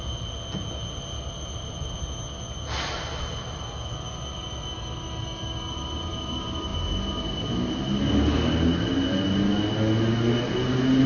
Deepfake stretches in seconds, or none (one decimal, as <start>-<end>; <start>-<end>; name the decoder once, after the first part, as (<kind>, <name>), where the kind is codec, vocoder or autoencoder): none